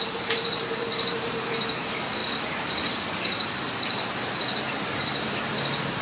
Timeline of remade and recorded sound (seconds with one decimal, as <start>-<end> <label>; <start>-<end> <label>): 0.0-2.2 remade; 2.2-6.0 recorded